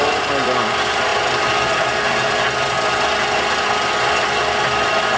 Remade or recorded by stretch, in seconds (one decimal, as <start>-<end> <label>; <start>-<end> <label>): 0.0-5.2 recorded